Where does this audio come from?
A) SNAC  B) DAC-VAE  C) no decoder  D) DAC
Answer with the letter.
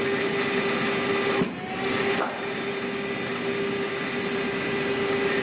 C